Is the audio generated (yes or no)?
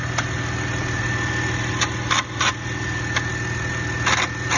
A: no